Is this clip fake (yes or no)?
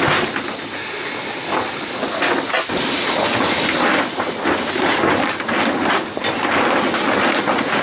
no